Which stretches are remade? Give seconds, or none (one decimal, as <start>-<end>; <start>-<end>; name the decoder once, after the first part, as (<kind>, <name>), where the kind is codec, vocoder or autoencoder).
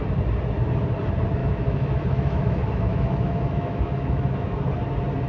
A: 1.4-4.6 (autoencoder, DAC-VAE)